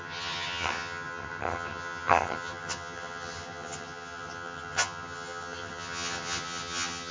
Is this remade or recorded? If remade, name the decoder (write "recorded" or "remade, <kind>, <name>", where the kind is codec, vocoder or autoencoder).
remade, vocoder, HiFi-GAN